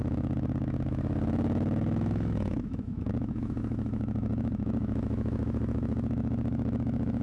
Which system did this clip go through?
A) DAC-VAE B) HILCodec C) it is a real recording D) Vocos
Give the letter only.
A